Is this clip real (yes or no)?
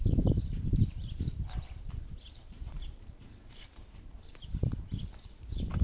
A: no